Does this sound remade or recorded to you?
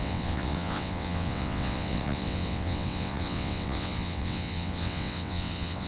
remade